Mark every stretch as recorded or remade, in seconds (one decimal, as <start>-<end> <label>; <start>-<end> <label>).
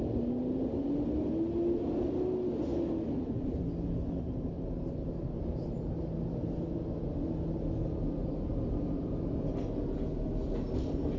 0.0-11.2 recorded